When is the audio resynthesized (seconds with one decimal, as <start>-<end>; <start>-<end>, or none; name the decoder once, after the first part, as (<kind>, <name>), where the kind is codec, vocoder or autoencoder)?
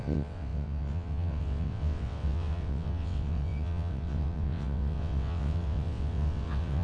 0.0-6.8 (vocoder, WaveNeXt)